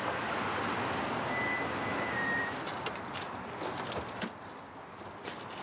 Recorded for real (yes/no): no